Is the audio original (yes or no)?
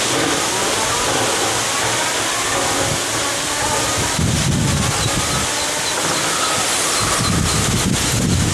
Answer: yes